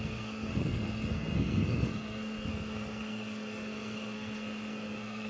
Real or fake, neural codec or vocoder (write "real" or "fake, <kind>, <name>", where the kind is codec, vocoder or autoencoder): fake, codec, SNAC